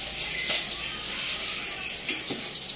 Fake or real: real